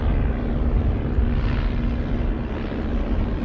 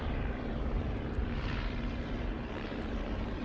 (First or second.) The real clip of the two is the first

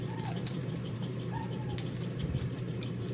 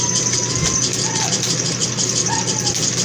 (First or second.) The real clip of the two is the second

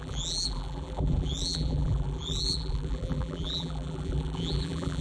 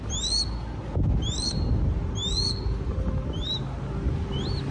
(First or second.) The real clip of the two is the second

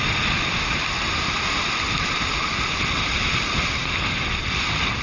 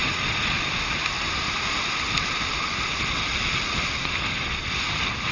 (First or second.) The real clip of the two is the second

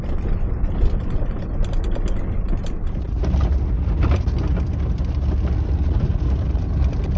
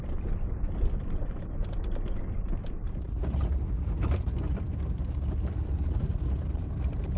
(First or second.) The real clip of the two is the first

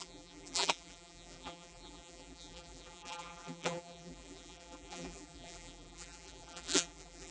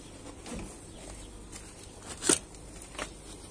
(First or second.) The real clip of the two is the second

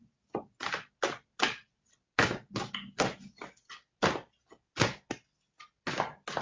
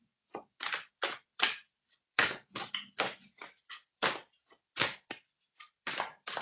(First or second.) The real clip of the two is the first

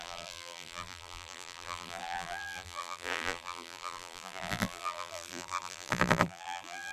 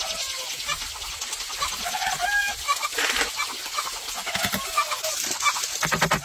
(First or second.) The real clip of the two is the second